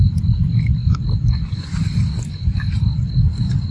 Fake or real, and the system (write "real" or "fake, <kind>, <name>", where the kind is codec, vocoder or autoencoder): real